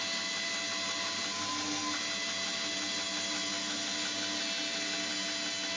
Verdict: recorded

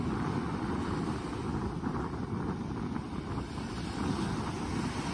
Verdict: recorded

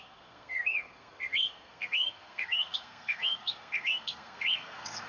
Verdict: remade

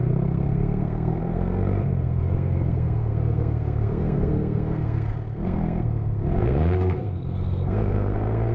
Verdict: remade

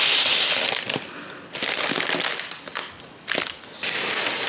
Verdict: recorded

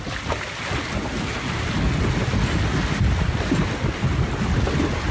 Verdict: recorded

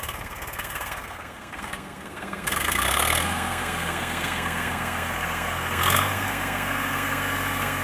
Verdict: remade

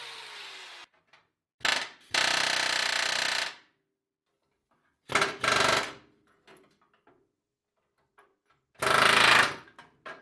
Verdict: recorded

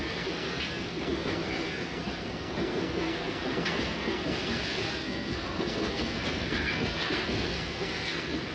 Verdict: remade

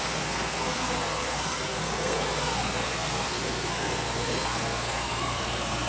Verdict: remade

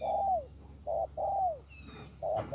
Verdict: recorded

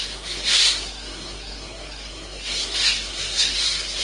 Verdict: remade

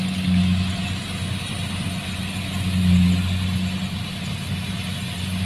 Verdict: recorded